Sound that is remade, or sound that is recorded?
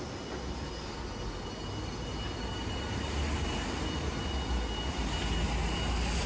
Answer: recorded